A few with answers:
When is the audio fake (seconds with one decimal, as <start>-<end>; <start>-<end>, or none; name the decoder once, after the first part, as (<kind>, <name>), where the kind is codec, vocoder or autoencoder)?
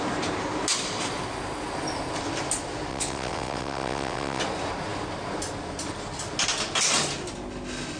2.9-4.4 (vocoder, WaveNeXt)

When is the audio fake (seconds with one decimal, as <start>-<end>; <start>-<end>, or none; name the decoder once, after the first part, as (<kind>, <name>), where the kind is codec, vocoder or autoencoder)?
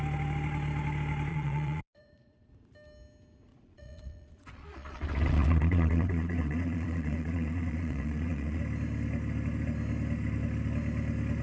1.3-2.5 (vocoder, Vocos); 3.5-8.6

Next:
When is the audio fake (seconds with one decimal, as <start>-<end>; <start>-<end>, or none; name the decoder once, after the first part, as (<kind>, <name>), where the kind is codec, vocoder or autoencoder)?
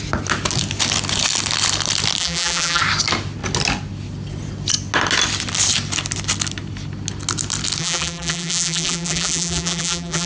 2.2-2.8 (vocoder, BigVGAN v2); 7.8-10.3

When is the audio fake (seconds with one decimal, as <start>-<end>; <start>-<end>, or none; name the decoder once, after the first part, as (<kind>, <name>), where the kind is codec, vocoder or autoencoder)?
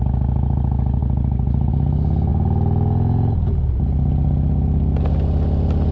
none